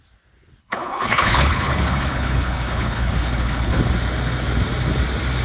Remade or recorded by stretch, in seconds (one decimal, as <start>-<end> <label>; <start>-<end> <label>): 0.0-0.6 recorded; 0.6-3.8 remade; 3.8-5.4 recorded

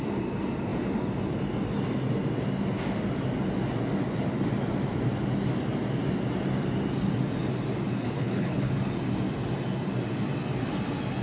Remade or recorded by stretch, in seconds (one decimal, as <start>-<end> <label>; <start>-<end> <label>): 0.0-8.0 recorded; 8.0-8.7 remade; 8.7-11.2 recorded